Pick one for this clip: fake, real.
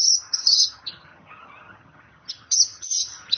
fake